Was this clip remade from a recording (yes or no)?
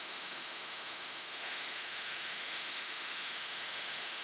yes